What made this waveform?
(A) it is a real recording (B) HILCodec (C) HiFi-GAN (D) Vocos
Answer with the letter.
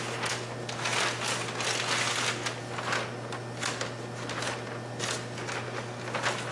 A